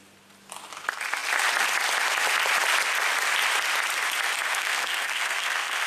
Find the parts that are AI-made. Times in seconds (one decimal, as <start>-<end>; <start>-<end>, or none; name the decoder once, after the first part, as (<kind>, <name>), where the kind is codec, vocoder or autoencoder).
4.5-5.9 (codec, SNAC)